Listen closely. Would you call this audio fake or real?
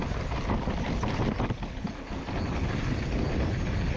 real